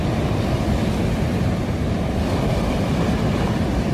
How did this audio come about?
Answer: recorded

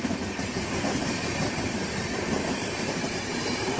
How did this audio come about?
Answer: remade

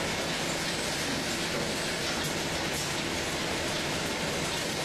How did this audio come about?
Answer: recorded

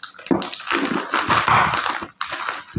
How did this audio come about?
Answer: recorded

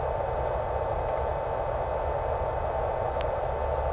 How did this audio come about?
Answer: recorded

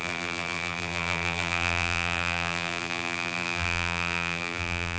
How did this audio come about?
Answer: remade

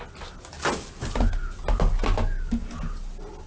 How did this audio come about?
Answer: recorded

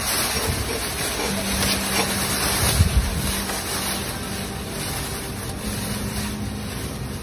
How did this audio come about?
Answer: recorded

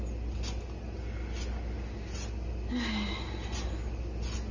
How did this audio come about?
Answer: recorded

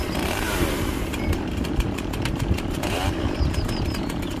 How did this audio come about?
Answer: remade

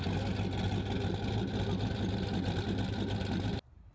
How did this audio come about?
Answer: recorded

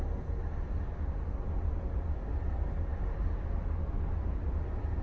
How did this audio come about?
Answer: recorded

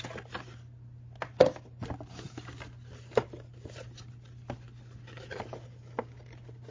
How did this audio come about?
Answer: recorded